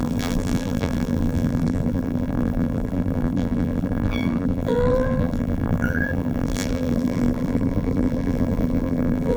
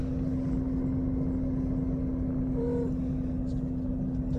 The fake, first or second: first